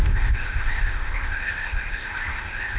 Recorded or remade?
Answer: remade